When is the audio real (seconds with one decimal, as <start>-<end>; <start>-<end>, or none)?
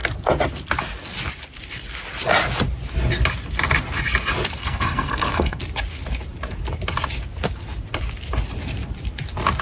0.0-4.6; 5.6-9.6